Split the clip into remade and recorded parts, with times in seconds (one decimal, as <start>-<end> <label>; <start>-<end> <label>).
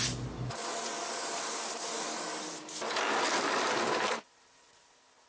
0.0-5.3 recorded